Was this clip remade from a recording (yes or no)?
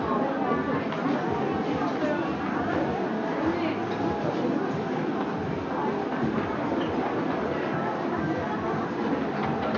no